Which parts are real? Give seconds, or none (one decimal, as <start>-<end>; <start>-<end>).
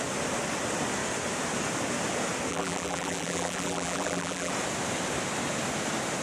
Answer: 0.0-2.5; 4.5-6.2